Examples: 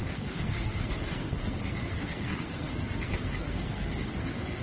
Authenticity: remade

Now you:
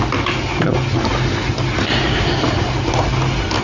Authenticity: recorded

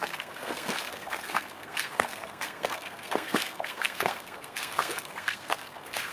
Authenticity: remade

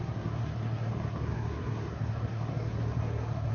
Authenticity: remade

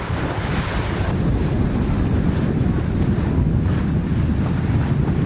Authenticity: recorded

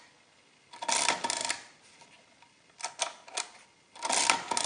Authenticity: recorded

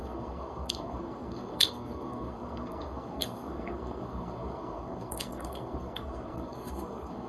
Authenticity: remade